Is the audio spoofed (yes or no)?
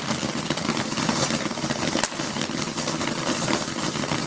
no